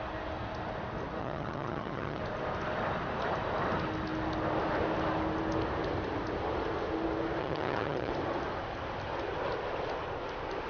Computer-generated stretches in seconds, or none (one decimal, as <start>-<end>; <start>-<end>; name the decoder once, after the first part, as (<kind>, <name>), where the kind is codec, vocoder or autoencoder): 1.2-2.2 (vocoder, HiFi-GAN); 7.4-8.1